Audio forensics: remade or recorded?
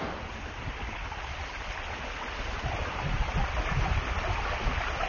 recorded